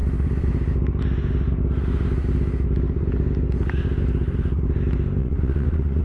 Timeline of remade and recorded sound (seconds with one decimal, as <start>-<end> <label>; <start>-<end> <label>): 0.0-5.2 recorded; 5.2-6.0 remade